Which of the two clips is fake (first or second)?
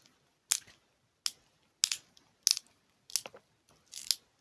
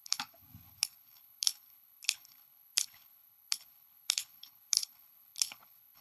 second